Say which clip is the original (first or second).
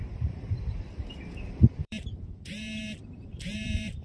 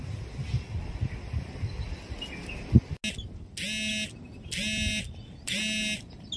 second